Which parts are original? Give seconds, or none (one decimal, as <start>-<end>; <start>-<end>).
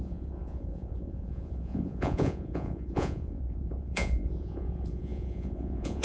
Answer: none